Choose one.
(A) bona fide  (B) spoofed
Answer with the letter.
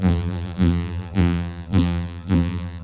B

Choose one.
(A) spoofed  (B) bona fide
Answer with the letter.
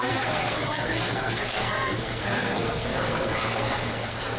A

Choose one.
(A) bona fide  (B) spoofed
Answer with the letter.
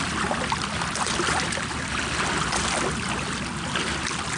A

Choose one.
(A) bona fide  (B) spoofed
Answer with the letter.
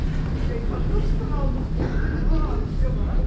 A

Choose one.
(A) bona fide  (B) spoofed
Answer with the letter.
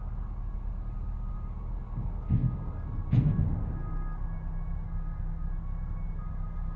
A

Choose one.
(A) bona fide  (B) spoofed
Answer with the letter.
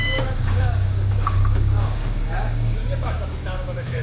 B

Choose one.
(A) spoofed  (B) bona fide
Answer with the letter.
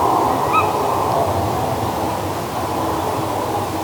B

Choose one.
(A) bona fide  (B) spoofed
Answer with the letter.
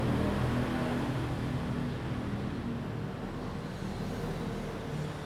A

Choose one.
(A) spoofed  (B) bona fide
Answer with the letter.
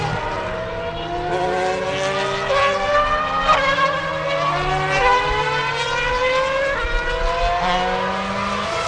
B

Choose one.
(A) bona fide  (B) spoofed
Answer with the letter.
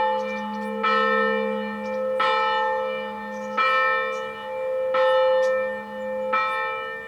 A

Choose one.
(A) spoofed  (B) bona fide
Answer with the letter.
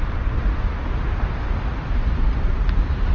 B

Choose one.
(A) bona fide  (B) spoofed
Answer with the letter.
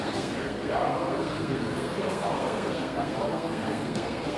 B